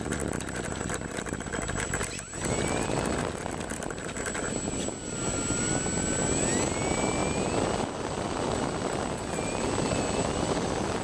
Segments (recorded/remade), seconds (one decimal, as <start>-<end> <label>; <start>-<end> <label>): 0.0-11.0 recorded